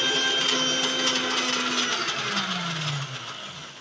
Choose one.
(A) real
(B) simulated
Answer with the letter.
A